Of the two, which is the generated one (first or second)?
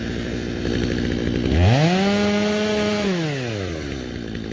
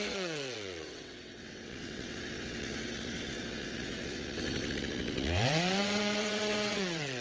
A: second